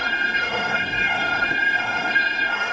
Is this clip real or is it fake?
fake